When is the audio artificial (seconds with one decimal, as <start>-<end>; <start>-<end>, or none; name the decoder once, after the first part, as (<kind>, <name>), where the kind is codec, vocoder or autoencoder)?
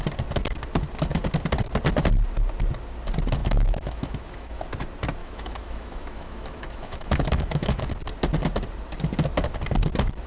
3.4-4.6 (autoencoder, DAC-VAE); 5.2-7.9